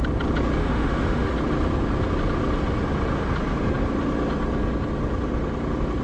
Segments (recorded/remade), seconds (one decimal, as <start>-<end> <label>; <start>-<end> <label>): 0.0-0.6 recorded; 0.6-1.3 remade; 1.3-6.0 recorded